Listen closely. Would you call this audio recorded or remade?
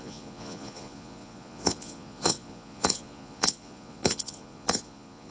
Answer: remade